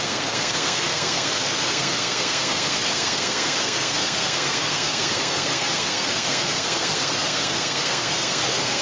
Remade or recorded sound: remade